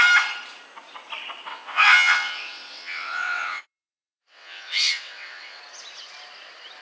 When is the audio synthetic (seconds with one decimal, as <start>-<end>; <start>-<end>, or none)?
1.5-5.6